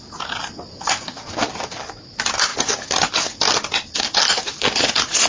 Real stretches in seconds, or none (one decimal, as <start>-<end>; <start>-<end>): 0.0-5.3